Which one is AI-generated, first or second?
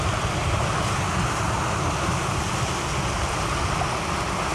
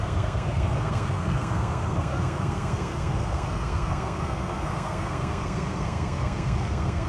second